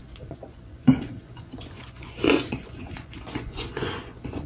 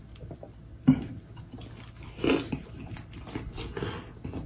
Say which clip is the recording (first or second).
second